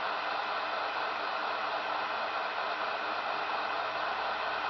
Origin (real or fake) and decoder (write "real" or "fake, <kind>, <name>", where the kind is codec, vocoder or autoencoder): real